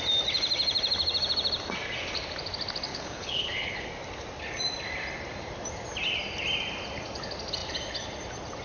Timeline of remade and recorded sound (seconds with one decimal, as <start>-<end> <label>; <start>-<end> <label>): 0.0-2.9 recorded; 2.9-3.9 remade; 3.9-8.6 recorded